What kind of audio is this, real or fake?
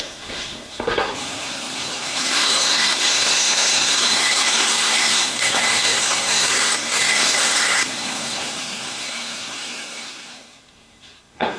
fake